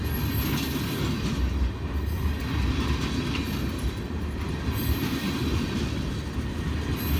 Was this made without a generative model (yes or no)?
yes